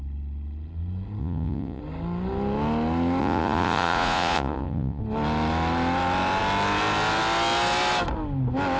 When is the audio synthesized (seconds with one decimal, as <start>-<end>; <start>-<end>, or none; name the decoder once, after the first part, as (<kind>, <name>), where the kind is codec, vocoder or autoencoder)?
1.2-1.8 (vocoder, Vocos); 3.2-5.0